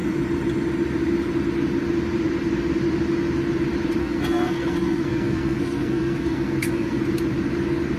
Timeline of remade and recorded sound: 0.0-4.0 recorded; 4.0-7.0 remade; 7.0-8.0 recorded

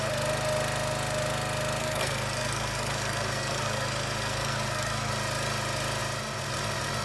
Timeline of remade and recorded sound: 0.0-1.8 recorded; 1.8-5.1 remade; 5.1-7.0 recorded

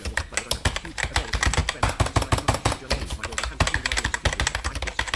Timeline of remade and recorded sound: 0.0-5.2 recorded

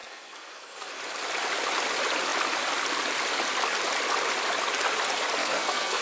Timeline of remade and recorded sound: 0.0-1.0 remade; 1.0-5.4 recorded; 5.4-6.0 remade